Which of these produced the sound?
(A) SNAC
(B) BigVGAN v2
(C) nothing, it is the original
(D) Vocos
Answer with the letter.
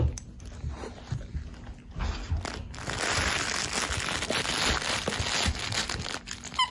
C